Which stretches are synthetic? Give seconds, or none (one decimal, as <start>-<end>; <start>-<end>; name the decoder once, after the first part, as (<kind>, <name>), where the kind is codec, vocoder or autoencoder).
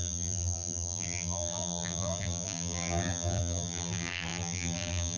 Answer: 0.0-5.2 (vocoder, BigVGAN v2)